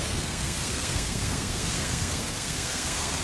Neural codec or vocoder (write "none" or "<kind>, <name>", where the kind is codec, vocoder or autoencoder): codec, SNAC